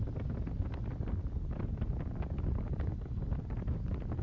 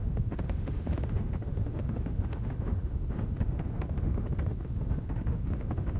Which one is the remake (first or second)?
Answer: second